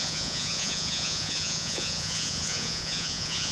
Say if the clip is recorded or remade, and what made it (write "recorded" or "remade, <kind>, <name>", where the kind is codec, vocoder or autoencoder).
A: remade, vocoder, Vocos